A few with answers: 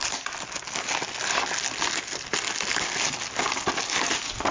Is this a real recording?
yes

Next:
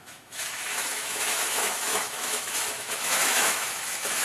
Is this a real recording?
no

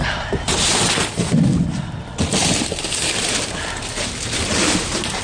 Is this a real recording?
no